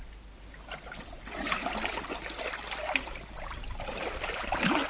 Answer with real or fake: real